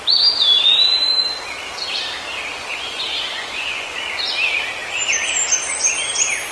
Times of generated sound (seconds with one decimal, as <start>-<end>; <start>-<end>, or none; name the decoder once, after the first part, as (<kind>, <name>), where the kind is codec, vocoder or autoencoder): 2.6-4.0 (vocoder, Vocos)